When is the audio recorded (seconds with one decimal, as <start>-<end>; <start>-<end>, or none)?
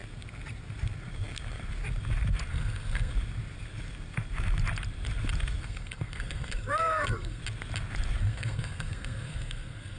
0.0-2.5; 3.1-5.6; 7.4-8.2